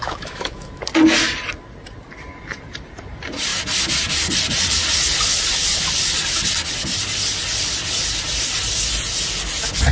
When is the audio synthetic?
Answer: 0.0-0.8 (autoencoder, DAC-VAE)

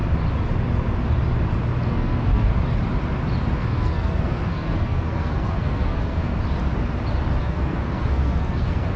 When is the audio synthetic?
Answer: 1.9-2.5 (codec, SNAC); 3.6-6.3; 7.4-9.0

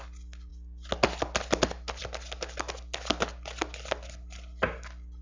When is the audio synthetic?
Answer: none

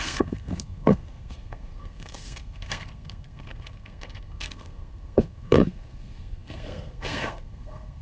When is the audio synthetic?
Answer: 0.0-8.0 (codec, SNAC)

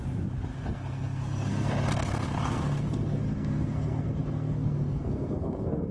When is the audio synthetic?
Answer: 0.5-1.7 (codec, SNAC); 2.1-5.9

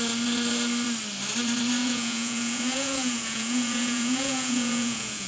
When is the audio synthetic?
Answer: 1.8-5.3 (vocoder, Vocos)

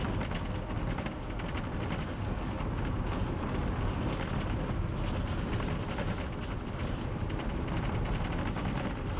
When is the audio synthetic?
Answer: 6.8-8.2 (vocoder, BigVGAN v2)

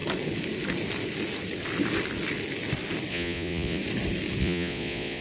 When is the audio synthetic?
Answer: 3.1-3.8 (vocoder, Vocos); 4.4-5.2